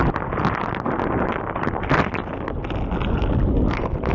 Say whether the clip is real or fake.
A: real